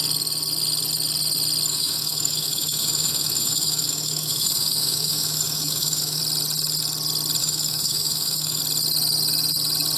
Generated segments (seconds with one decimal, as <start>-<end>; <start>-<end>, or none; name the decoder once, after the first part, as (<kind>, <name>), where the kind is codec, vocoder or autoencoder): 1.7-6.2 (autoencoder, DAC-VAE); 7.4-8.6